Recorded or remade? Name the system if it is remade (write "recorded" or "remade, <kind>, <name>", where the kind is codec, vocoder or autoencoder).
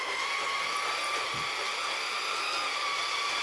recorded